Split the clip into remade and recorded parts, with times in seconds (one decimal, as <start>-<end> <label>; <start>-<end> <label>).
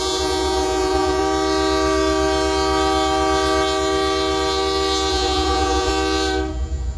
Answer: 0.0-1.2 remade; 1.2-5.1 recorded; 5.1-5.9 remade; 5.9-6.5 recorded; 6.5-7.0 remade